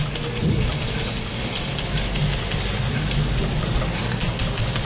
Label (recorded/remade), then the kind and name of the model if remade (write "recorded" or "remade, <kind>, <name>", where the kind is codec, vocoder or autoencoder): recorded